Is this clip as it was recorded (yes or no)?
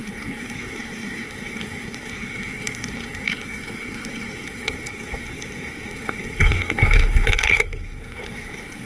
no